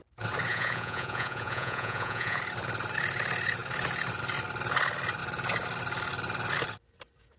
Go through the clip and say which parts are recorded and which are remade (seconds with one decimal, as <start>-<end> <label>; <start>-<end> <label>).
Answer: 0.0-0.5 recorded; 0.5-2.4 remade; 2.4-7.4 recorded